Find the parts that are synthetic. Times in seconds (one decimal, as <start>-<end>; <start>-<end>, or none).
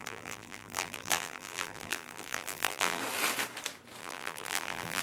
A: 0.0-3.0; 4.0-5.0